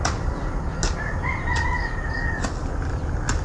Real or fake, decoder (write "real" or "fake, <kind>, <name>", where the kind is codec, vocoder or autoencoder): real